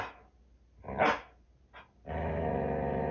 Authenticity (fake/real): real